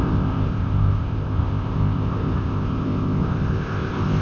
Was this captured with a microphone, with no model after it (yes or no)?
no